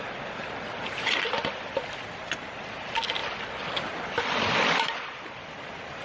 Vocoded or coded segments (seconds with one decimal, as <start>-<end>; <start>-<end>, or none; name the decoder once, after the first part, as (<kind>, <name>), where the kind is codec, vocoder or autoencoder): none